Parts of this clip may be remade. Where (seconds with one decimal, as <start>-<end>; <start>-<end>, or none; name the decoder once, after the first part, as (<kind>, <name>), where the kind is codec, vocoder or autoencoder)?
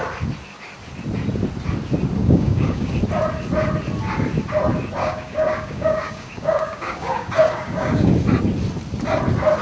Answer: 2.2-2.9 (codec, DAC); 5.0-8.1